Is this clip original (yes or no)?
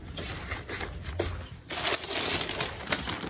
yes